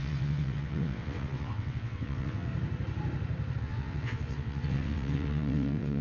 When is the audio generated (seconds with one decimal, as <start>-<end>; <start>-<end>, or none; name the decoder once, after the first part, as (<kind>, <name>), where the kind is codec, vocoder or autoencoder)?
0.0-2.5 (vocoder, WaveNeXt); 3.6-6.0